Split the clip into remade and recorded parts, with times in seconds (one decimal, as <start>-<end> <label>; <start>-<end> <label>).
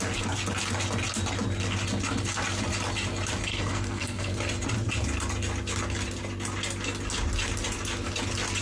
0.0-3.5 recorded; 3.5-4.3 remade; 4.3-8.6 recorded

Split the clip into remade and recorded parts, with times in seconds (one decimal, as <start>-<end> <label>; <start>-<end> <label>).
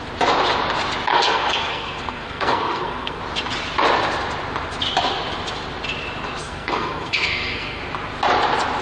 0.0-1.1 recorded; 1.1-3.2 remade; 3.2-6.4 recorded; 6.4-7.8 remade; 7.8-8.8 recorded